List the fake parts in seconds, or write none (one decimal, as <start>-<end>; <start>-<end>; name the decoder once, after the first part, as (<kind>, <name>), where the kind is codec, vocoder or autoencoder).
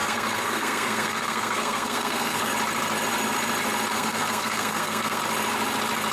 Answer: 0.0-2.5 (codec, SNAC); 3.9-5.2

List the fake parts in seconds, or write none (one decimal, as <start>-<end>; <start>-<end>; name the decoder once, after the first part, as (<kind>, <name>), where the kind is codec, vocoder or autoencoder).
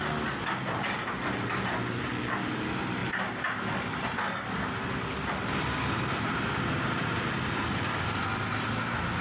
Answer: none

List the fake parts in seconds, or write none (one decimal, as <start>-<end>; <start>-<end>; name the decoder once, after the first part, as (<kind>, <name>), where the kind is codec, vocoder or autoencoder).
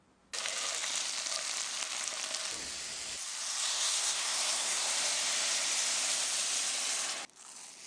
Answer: 3.7-4.9 (codec, SNAC)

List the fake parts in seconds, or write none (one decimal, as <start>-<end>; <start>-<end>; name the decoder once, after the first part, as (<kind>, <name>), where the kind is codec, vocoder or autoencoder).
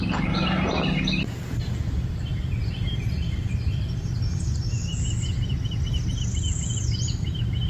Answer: 2.3-4.4 (vocoder, BigVGAN v2)